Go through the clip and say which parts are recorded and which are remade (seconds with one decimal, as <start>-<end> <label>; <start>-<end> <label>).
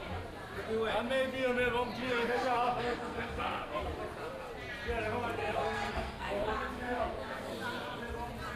0.0-2.0 recorded; 2.0-3.8 remade; 3.8-5.4 recorded; 5.4-7.5 remade; 7.5-8.6 recorded